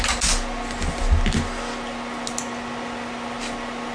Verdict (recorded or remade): recorded